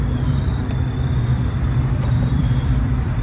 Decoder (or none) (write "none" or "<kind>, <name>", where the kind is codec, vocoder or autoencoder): vocoder, BigVGAN v2